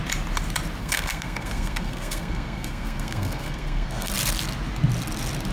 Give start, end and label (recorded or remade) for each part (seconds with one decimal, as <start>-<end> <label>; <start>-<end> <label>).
0.0-0.8 recorded; 0.8-4.1 remade; 4.1-5.5 recorded